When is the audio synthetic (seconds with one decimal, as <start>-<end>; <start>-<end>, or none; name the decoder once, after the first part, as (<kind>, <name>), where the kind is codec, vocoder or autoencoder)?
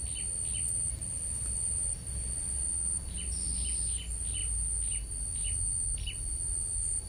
none